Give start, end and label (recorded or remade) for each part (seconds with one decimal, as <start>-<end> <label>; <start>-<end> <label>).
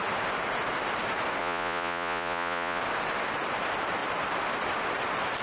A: 0.0-1.4 recorded; 1.4-2.8 remade; 2.8-5.4 recorded